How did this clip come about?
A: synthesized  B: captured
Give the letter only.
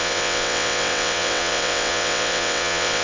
A